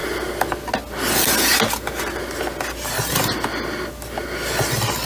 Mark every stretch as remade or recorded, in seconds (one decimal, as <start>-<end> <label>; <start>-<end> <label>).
0.0-5.1 recorded